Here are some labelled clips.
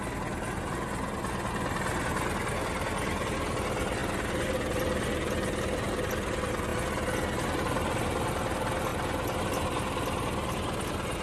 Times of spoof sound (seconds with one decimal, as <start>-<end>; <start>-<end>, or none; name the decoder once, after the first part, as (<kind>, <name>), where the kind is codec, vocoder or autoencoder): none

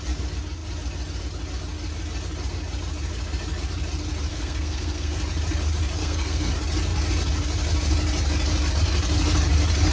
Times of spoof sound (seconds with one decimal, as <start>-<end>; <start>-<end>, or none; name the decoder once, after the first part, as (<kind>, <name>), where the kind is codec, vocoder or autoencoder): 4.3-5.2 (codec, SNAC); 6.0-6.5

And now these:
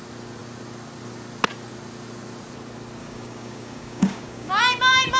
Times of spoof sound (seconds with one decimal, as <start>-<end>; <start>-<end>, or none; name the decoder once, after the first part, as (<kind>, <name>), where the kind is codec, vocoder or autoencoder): 3.0-4.6 (codec, DAC)

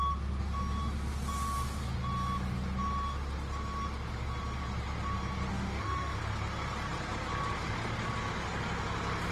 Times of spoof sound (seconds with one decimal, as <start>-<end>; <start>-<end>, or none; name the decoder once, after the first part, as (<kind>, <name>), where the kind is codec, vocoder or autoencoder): 5.5-6.2 (autoencoder, DAC-VAE)